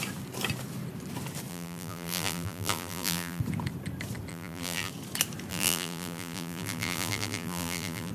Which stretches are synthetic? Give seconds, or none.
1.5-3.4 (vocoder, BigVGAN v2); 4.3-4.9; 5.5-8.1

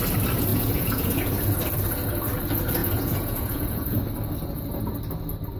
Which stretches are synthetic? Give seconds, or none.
0.5-1.3 (vocoder, Vocos); 2.8-4.0